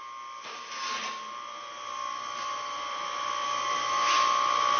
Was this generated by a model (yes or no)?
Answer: no